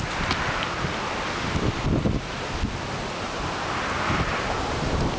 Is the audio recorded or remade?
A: recorded